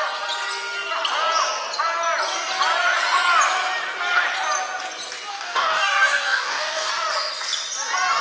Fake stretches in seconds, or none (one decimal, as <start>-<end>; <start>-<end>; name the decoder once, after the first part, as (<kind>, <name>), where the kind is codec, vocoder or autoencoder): 5.3-6.9 (codec, DAC)